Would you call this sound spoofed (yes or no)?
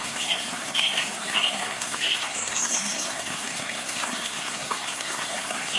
yes